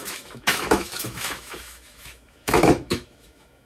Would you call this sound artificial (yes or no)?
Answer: yes